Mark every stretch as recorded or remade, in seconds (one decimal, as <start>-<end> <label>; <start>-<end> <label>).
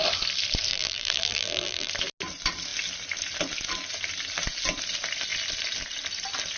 0.0-0.7 recorded; 0.7-1.9 remade; 1.9-6.6 recorded